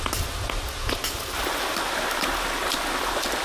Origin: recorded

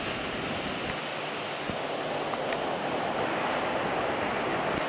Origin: recorded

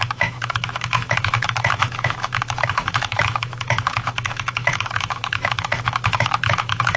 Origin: remade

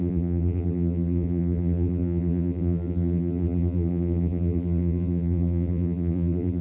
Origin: remade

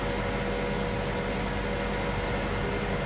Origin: recorded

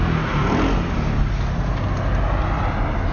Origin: recorded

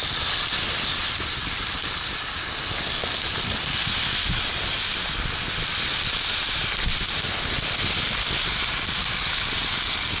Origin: recorded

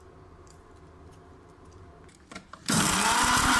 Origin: recorded